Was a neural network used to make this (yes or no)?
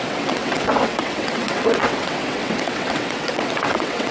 yes